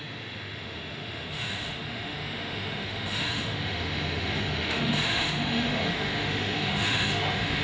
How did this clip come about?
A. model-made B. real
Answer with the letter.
A